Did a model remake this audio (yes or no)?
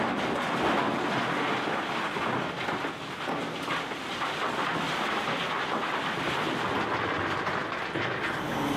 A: no